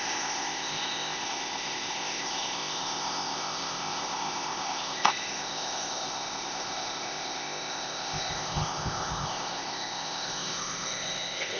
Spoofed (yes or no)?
yes